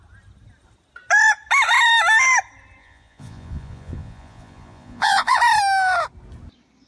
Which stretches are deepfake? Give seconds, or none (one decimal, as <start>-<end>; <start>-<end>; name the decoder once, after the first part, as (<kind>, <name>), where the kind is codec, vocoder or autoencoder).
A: 2.8-5.4 (vocoder, Vocos)